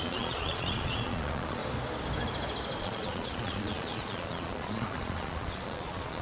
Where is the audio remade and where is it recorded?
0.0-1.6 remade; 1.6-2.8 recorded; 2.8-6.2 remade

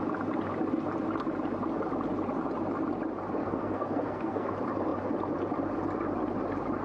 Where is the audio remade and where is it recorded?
0.0-3.4 recorded; 3.4-4.5 remade; 4.5-6.8 recorded

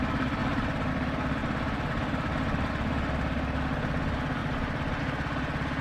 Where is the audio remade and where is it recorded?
0.0-0.4 recorded; 0.4-0.9 remade; 0.9-1.4 recorded; 1.4-2.7 remade; 2.7-4.4 recorded; 4.4-5.0 remade; 5.0-5.8 recorded

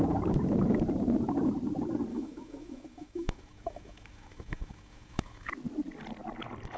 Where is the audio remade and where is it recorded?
0.0-2.1 recorded; 2.1-5.5 remade; 5.5-6.8 recorded

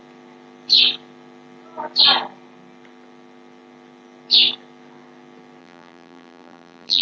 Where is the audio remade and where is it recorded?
0.0-5.6 recorded; 5.6-7.0 remade

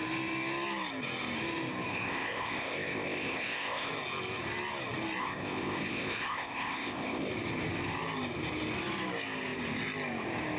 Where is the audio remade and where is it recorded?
0.0-1.9 recorded; 1.9-3.9 remade; 3.9-5.2 recorded; 5.2-7.3 remade; 7.3-10.6 recorded

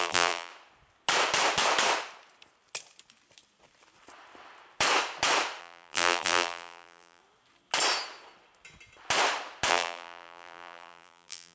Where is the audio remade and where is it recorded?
0.0-0.5 remade; 0.5-5.6 recorded; 5.6-7.2 remade; 7.2-9.7 recorded; 9.7-11.5 remade